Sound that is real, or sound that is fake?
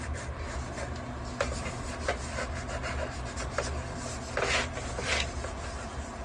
real